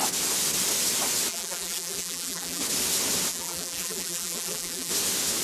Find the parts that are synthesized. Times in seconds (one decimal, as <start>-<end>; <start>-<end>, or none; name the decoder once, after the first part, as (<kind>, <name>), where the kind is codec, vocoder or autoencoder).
1.3-2.6 (vocoder, BigVGAN v2); 3.3-4.9